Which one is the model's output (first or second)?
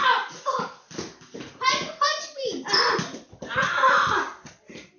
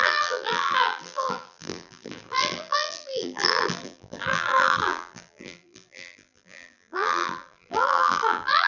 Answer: second